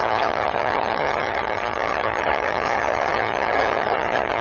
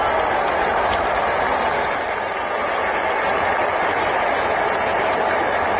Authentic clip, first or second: second